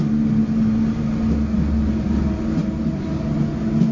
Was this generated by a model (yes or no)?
no